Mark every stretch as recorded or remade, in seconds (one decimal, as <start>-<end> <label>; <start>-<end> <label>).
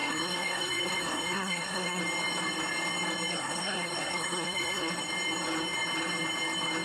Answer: 0.0-2.0 remade; 2.0-3.3 recorded; 3.3-4.9 remade; 4.9-6.8 recorded